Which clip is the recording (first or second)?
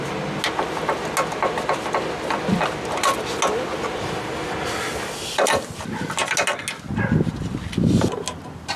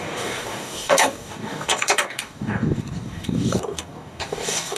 first